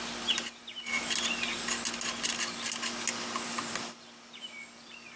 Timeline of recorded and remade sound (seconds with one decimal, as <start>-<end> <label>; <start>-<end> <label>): 0.0-5.2 recorded